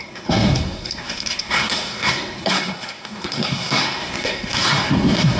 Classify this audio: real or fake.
fake